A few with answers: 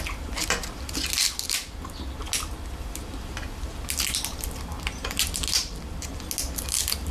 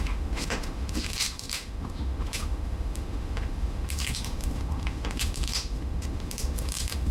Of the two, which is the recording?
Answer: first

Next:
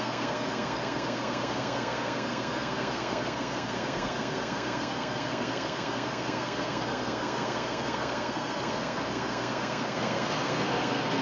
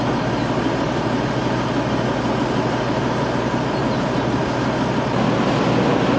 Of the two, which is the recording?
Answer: second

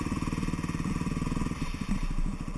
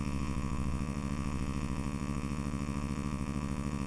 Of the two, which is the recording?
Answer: first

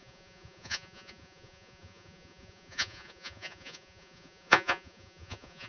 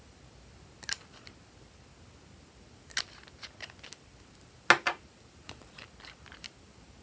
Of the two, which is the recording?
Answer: second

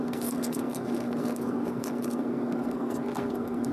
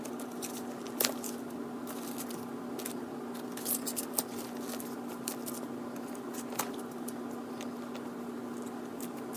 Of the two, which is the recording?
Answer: second